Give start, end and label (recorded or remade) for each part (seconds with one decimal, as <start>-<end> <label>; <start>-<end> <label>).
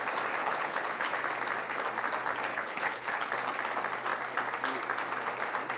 0.0-0.4 recorded; 0.4-1.1 remade; 1.1-2.5 recorded; 2.5-3.3 remade; 3.3-5.8 recorded